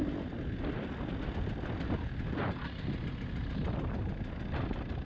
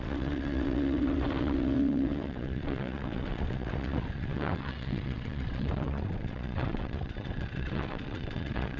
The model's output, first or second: second